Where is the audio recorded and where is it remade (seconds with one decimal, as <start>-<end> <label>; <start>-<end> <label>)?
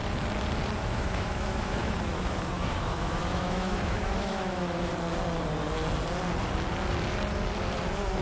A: 0.0-0.8 recorded; 0.8-4.9 remade; 4.9-8.2 recorded